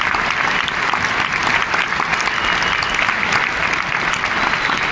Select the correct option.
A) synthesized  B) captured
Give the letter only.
B